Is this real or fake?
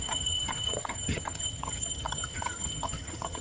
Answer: fake